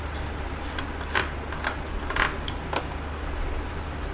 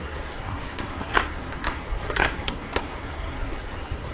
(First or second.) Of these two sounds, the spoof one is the second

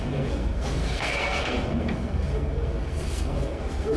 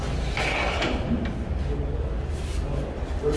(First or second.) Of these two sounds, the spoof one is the first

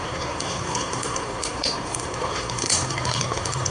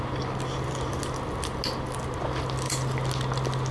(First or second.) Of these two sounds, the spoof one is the first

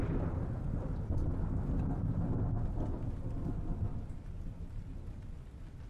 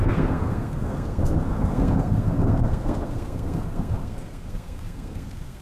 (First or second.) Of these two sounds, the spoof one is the second